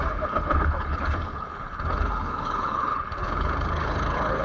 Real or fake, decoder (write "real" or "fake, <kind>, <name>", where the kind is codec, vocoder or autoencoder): fake, codec, HILCodec